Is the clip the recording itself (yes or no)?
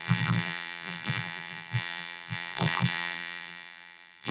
no